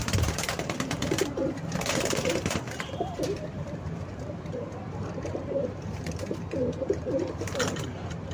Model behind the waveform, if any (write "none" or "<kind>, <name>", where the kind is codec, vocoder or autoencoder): vocoder, BigVGAN v2